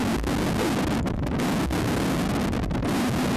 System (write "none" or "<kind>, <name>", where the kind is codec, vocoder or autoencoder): none